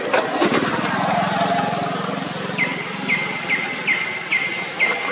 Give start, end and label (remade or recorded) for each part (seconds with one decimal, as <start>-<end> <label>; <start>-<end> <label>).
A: 0.0-5.1 recorded